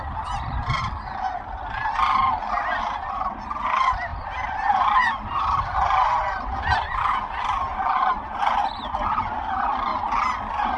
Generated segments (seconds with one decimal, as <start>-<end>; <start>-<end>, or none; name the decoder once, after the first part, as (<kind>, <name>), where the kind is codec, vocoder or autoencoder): none